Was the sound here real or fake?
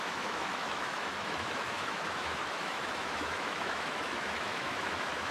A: fake